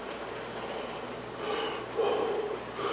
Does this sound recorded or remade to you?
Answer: remade